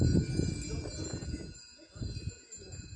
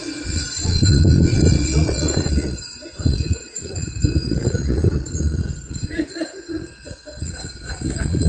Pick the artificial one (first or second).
second